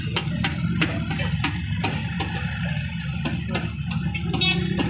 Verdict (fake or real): real